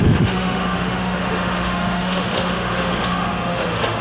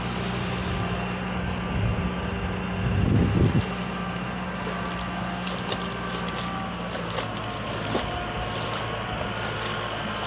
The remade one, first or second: first